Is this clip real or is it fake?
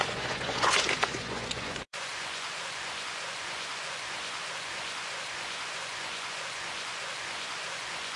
fake